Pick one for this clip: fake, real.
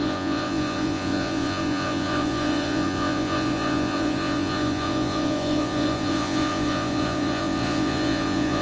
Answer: fake